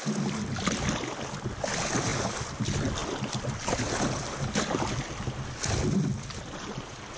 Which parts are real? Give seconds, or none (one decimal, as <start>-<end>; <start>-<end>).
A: 0.0-7.2